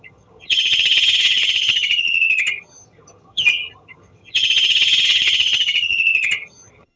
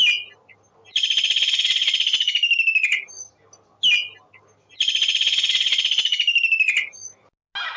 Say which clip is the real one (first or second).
second